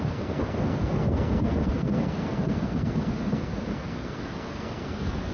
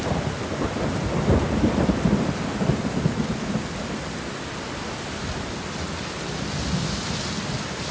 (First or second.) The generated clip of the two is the first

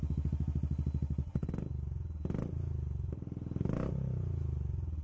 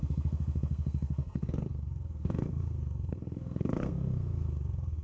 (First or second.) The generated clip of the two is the second